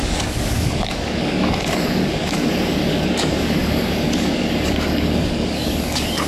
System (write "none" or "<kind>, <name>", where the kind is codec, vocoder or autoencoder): codec, DAC